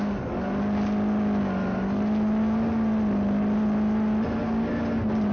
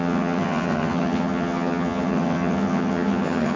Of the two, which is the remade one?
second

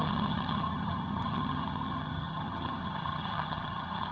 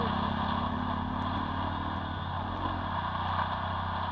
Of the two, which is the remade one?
first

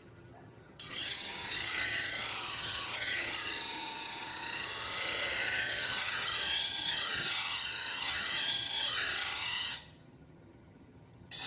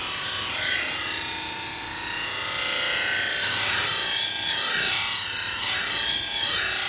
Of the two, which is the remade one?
first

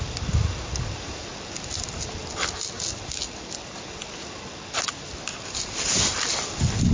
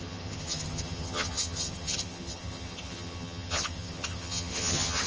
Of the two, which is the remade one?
second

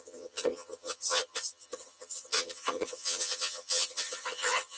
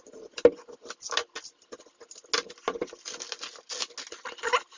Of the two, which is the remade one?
first